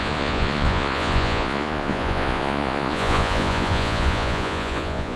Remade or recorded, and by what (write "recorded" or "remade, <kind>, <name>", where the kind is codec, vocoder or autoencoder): remade, vocoder, Vocos